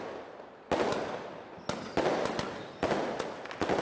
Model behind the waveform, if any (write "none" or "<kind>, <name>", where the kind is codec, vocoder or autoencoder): none